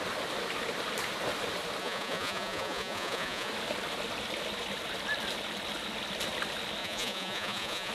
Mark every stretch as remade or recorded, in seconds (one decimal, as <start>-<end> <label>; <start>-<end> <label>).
0.0-1.8 recorded; 1.8-3.5 remade; 3.5-6.8 recorded; 6.8-7.9 remade